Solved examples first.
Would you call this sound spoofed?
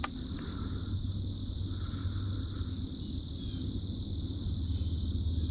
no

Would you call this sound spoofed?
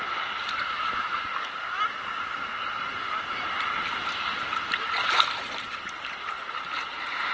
no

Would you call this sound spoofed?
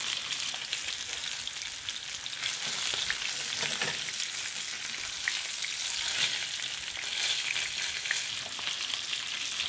no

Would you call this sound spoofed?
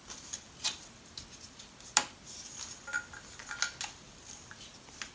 no